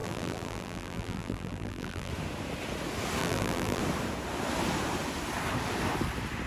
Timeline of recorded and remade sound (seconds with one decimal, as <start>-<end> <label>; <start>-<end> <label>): 0.0-2.1 remade; 2.1-3.2 recorded; 3.2-3.8 remade; 3.8-6.5 recorded

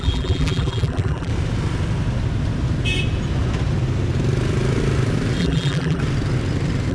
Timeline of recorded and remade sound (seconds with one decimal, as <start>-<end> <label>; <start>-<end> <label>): 0.0-1.3 remade; 1.3-5.4 recorded; 5.4-6.0 remade; 6.0-6.9 recorded

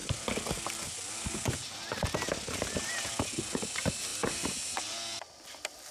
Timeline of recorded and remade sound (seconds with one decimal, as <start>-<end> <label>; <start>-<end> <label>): 0.0-5.9 recorded

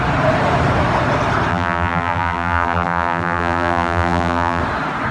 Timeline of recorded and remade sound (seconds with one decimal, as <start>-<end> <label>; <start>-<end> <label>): 0.0-1.5 recorded; 1.5-4.6 remade; 4.6-5.1 recorded